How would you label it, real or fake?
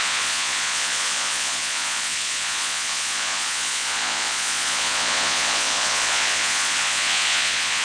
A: fake